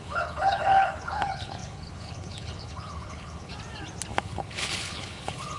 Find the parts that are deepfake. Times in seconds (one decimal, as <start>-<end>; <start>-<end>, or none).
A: 0.0-3.5; 4.2-5.6